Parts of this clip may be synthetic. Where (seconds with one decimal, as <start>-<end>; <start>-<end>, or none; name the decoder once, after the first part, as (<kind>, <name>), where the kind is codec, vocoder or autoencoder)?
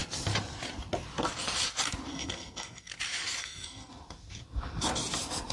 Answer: 2.1-2.9 (codec, SNAC); 3.4-3.9